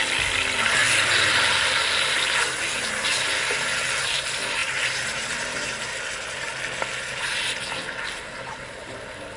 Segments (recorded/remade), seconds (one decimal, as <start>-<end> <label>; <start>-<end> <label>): 0.0-9.4 recorded